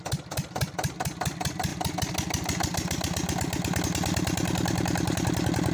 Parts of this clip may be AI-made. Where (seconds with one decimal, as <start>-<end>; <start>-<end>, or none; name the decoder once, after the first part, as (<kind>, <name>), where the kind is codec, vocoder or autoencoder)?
none